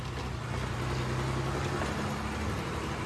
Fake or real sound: real